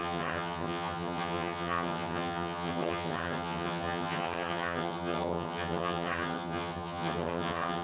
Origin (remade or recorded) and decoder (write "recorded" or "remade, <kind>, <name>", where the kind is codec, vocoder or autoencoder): remade, vocoder, HiFi-GAN